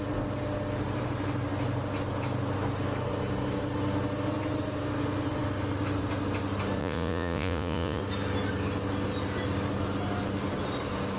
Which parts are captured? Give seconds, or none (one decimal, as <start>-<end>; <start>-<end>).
0.0-6.8; 8.0-11.2